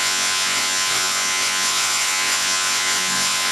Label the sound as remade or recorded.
remade